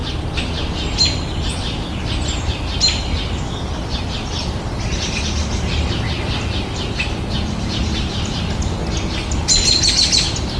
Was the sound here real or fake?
real